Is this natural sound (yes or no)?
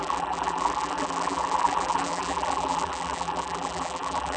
no